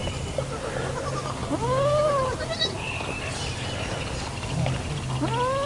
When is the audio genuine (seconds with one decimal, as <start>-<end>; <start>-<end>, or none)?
0.0-5.7